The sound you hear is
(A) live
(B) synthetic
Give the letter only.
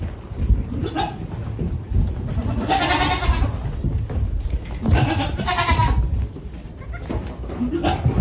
A